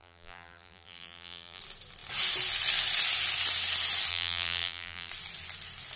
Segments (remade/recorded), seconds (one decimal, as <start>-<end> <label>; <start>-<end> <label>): 0.0-1.6 remade; 1.6-4.1 recorded; 4.1-5.1 remade; 5.1-6.0 recorded